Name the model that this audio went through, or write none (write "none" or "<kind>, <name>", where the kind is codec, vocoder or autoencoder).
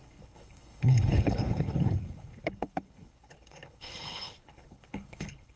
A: codec, HILCodec